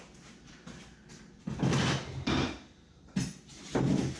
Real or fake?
real